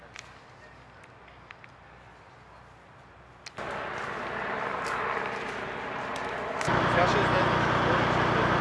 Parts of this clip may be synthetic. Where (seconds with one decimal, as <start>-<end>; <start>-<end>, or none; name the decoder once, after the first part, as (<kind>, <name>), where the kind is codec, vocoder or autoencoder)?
none